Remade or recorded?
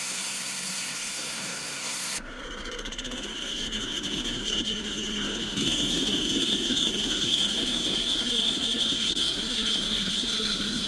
remade